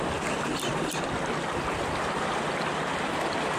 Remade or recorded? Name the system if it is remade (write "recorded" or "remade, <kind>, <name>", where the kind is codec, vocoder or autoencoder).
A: recorded